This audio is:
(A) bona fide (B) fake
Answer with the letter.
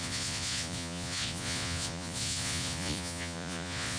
B